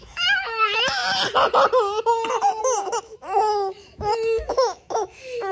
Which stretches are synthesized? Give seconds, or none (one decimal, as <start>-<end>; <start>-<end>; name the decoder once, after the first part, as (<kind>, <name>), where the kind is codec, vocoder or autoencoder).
0.0-1.0 (autoencoder, DAC-VAE); 3.0-5.5